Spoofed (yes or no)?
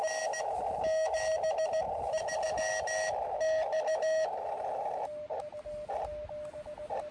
no